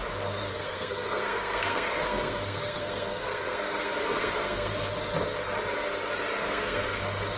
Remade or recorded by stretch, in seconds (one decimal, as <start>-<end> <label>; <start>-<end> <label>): 0.0-0.5 recorded; 0.5-4.7 remade; 4.7-6.4 recorded; 6.4-7.0 remade; 7.0-7.4 recorded